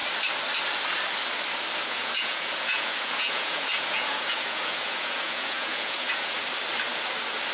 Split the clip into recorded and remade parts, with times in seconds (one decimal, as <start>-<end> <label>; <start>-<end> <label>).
0.0-1.8 recorded; 1.8-6.3 remade; 6.3-7.5 recorded

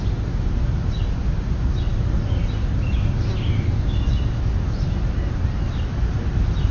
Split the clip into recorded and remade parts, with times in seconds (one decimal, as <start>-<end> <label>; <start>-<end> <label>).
0.0-6.7 recorded

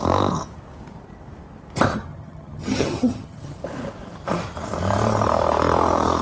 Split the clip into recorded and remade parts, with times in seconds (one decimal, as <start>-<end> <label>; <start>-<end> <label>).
0.0-1.9 recorded; 1.9-3.6 remade; 3.6-6.2 recorded

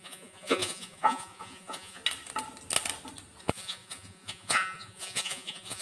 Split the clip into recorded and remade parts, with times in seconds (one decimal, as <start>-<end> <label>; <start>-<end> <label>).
0.0-2.0 remade; 2.0-3.4 recorded; 3.4-5.8 remade

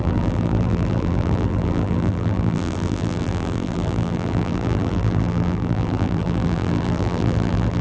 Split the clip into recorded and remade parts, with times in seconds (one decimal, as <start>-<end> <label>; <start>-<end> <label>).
0.0-7.8 remade